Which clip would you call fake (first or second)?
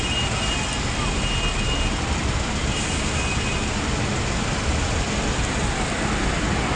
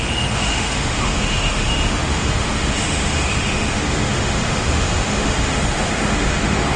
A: second